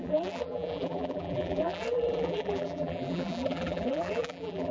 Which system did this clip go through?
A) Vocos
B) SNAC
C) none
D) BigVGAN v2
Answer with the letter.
D